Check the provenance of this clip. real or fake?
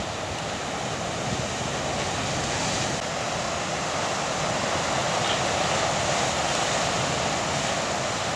real